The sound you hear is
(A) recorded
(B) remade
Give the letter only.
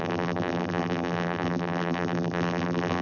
B